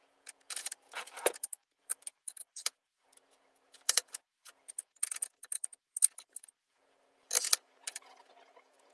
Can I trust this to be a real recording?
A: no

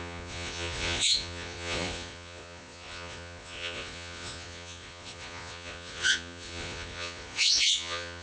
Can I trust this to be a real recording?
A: no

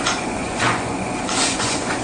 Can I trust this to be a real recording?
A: no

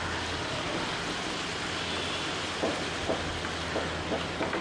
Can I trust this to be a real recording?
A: yes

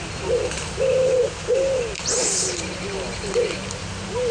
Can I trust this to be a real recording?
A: yes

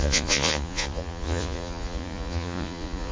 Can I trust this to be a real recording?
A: no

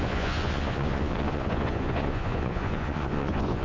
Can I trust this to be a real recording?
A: no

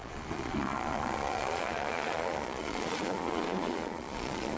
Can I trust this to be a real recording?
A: no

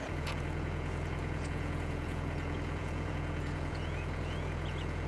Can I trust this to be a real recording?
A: no